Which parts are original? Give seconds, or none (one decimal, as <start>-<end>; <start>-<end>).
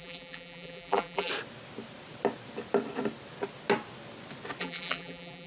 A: 1.3-4.6